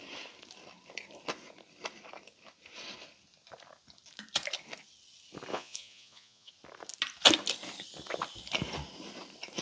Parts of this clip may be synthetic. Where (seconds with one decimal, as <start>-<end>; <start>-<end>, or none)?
5.5-6.5